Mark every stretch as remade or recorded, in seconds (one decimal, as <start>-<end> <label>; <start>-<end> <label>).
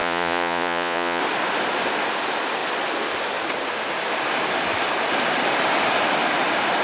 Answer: 0.0-1.2 remade; 1.2-6.8 recorded